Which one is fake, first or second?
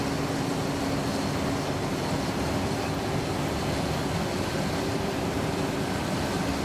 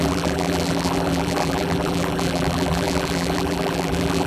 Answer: second